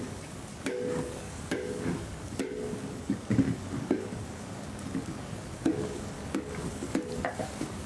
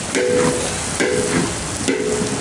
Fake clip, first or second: first